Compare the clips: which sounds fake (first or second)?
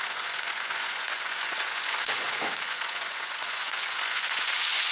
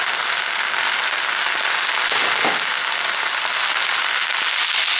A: first